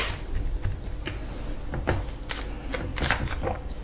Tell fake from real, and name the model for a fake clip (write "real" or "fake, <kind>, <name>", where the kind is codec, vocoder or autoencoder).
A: real